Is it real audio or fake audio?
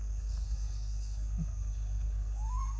fake